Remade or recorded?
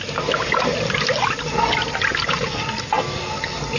recorded